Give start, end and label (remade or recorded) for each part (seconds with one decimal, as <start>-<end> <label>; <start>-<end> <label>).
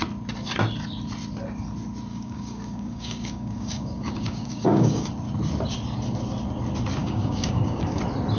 0.0-2.1 recorded; 2.1-5.1 remade; 5.1-7.0 recorded; 7.0-8.0 remade; 8.0-8.4 recorded